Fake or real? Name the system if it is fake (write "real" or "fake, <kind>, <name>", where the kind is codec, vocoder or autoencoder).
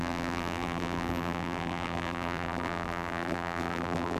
fake, vocoder, BigVGAN v2